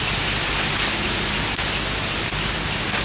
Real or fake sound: real